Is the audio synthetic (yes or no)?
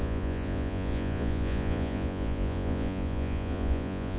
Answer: yes